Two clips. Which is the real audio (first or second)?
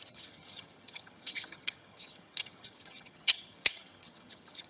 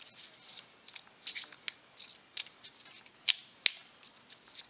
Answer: second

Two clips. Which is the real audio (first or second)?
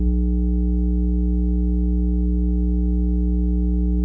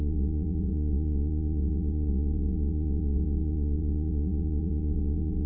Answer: first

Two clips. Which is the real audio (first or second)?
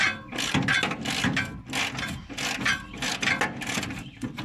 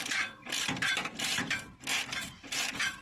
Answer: first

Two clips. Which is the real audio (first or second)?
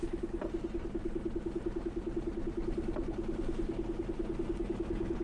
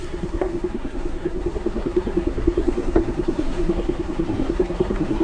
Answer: first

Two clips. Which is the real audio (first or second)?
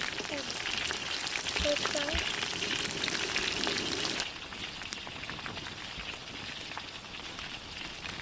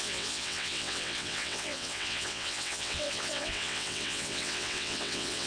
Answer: first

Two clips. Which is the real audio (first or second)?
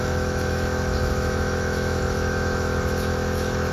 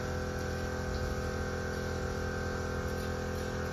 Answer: second